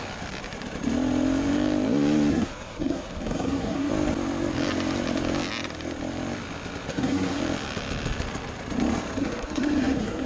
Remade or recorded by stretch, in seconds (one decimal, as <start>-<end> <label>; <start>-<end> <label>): 0.0-2.3 recorded; 2.3-3.9 remade; 3.9-6.9 recorded; 6.9-7.4 remade; 7.4-9.2 recorded; 9.2-10.3 remade